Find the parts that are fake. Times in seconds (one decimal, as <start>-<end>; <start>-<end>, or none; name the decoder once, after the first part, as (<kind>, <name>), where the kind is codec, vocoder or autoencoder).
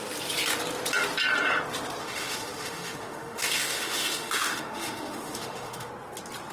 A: 2.0-5.9 (autoencoder, DAC-VAE)